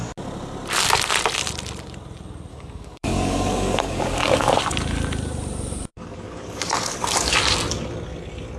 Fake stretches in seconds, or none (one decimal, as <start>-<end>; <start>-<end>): 2.5-4.5; 5.9-7.4